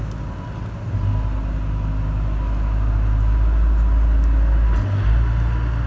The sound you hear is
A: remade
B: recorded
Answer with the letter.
B